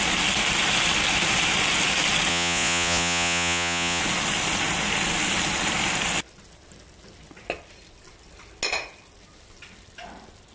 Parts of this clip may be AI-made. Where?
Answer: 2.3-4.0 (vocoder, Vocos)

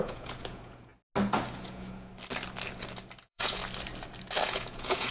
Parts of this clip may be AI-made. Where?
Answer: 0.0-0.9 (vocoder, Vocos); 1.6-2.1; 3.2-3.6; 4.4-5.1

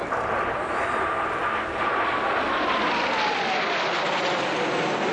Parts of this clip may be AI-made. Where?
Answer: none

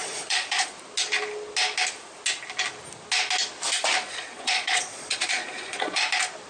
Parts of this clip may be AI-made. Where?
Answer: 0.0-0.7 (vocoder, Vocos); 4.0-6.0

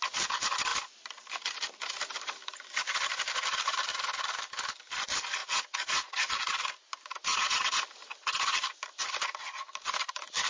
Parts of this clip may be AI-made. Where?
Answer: 3.9-4.4 (vocoder, Vocos); 5.4-6.3

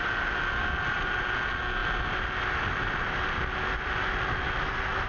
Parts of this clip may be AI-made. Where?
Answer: none

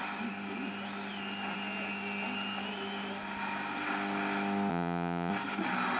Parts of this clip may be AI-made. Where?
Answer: 4.7-5.3 (vocoder, Vocos)